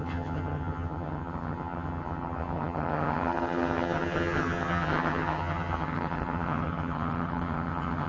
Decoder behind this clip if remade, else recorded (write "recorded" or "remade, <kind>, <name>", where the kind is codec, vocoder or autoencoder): remade, vocoder, HiFi-GAN